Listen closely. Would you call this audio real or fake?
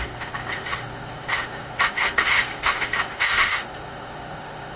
fake